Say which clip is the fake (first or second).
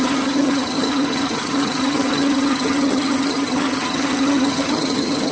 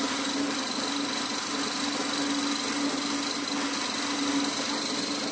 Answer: first